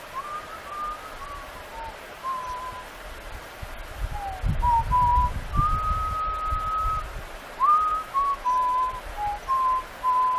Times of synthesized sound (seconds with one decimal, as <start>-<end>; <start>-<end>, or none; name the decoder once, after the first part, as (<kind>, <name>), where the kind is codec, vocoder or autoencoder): 7.9-8.9 (autoencoder, DAC-VAE)